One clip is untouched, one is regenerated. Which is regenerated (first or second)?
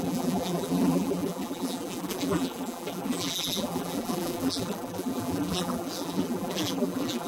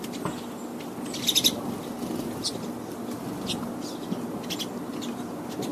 first